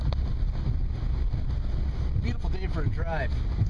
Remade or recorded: recorded